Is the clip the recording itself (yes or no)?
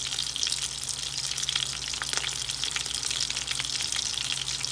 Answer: yes